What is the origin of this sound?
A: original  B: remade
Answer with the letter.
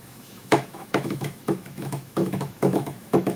B